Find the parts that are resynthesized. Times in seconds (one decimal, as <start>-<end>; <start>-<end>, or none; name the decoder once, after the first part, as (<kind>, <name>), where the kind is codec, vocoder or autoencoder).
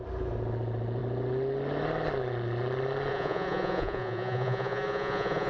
3.1-5.5 (vocoder, Vocos)